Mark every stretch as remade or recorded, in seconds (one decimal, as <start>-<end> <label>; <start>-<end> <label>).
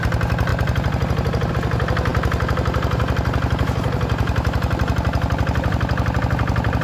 0.0-6.8 recorded